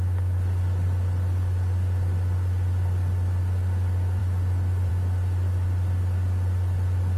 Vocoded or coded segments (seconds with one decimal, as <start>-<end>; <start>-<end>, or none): none